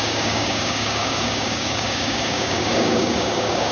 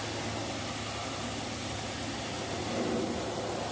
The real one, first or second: second